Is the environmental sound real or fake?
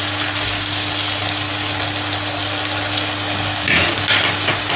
real